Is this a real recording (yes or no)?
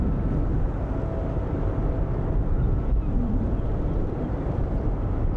yes